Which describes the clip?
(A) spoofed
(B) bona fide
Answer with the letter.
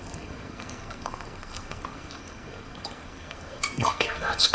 A